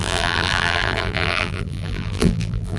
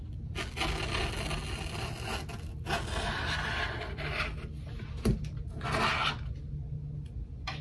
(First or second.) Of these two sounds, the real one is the second